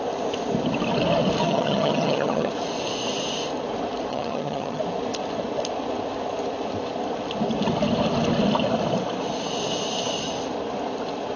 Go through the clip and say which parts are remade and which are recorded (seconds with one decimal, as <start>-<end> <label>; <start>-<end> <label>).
0.0-1.4 recorded; 1.4-2.5 remade; 2.5-4.1 recorded; 4.1-4.8 remade; 4.8-11.4 recorded